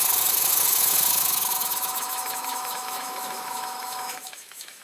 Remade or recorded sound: remade